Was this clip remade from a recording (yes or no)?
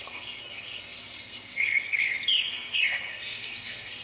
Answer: yes